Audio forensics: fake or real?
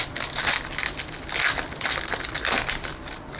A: real